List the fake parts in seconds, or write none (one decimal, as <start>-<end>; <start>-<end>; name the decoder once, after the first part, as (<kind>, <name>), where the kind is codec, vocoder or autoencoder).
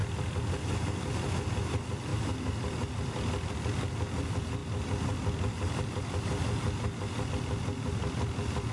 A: none